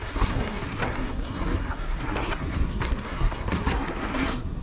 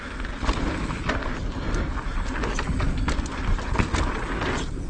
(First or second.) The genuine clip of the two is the second